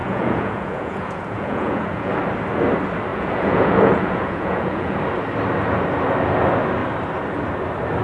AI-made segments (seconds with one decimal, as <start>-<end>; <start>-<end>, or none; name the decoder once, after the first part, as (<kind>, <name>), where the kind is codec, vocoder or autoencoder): 0.0-2.1 (vocoder, Vocos); 3.1-5.0